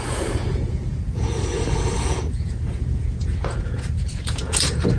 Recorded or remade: remade